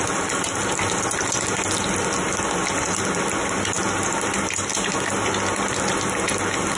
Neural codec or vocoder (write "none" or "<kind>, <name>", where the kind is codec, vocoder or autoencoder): none